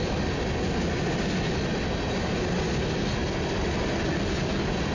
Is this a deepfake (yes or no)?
no